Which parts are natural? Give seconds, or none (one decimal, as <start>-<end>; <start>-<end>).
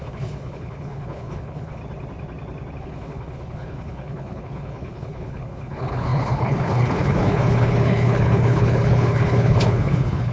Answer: 1.8-2.8